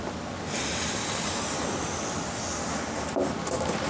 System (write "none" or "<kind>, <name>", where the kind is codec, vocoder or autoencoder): none